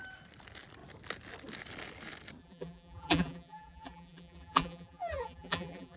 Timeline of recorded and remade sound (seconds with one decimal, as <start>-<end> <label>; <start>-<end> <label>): 0.0-2.4 recorded; 2.4-6.0 remade